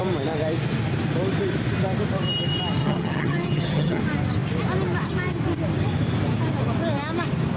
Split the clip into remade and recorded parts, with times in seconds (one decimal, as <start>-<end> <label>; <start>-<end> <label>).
0.0-2.8 recorded; 2.8-4.0 remade; 4.0-7.6 recorded